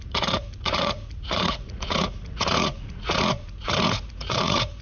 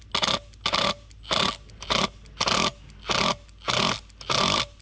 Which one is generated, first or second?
first